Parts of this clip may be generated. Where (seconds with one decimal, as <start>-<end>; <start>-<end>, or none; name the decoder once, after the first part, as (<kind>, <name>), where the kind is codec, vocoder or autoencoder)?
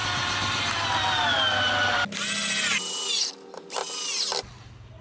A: none